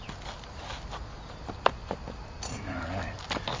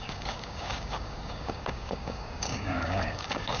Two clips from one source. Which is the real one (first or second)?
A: first